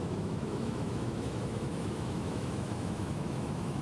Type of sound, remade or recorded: remade